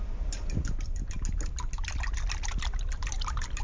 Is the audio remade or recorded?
recorded